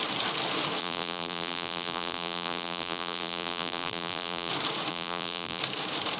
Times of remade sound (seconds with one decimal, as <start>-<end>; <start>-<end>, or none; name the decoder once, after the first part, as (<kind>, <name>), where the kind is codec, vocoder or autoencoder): 0.8-4.5 (vocoder, BigVGAN v2); 4.9-5.6